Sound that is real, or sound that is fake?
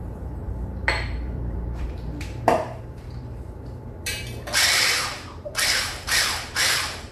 fake